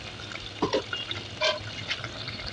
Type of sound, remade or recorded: recorded